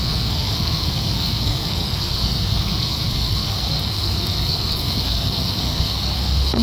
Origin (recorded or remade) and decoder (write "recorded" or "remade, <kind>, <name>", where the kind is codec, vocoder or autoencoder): remade, codec, SNAC